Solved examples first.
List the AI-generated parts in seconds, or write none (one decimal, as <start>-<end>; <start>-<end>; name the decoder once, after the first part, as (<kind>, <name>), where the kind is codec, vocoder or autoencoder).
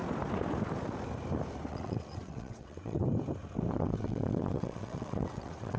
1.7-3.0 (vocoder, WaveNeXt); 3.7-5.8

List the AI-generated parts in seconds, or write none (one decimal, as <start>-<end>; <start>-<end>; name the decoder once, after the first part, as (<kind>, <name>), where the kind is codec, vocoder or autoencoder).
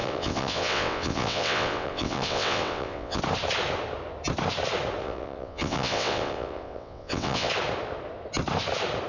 0.0-3.2 (vocoder, WaveNeXt); 5.0-7.5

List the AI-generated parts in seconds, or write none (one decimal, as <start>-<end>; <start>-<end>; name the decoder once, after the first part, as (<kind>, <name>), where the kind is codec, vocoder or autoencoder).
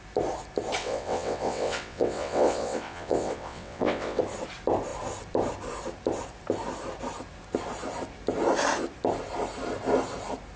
0.8-4.2 (vocoder, WaveNeXt)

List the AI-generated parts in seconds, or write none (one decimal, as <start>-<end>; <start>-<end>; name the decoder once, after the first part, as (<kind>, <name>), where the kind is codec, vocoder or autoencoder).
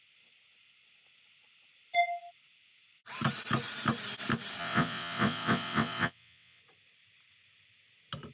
4.6-6.6 (vocoder, WaveNeXt)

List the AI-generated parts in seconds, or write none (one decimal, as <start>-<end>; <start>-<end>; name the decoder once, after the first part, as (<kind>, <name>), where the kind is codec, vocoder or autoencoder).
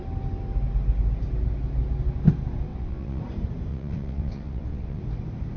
2.7-3.2 (vocoder, WaveNeXt); 3.7-5.0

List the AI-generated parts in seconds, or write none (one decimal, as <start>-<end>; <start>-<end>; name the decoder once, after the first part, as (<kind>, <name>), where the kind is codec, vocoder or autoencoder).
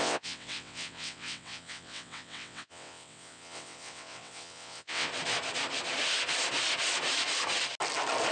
0.0-5.1 (vocoder, WaveNeXt)